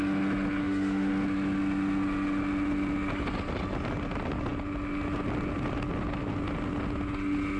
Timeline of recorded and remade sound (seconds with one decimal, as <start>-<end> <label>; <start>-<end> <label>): 0.0-0.6 recorded; 0.6-1.1 remade; 1.1-7.6 recorded